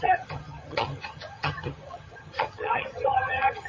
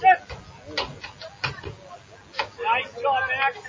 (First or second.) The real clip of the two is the second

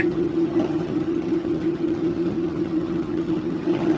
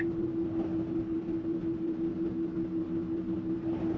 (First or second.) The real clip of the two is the second